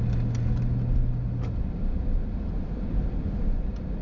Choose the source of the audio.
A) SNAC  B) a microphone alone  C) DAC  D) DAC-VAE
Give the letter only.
B